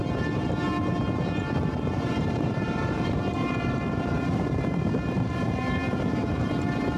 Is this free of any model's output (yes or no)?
no